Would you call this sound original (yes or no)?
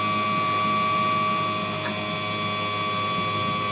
yes